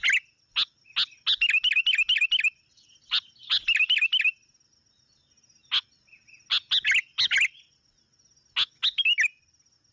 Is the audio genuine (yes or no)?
yes